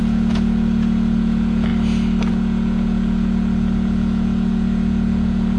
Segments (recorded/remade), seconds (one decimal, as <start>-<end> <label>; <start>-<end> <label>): 0.0-1.7 remade; 1.7-2.3 recorded; 2.3-5.6 remade